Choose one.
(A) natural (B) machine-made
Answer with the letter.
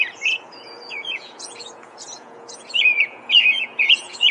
B